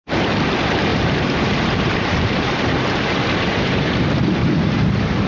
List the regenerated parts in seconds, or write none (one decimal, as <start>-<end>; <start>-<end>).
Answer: 0.9-3.9; 4.4-5.3